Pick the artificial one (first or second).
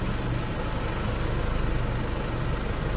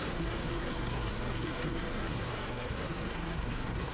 second